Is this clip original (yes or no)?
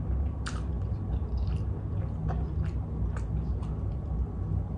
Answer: yes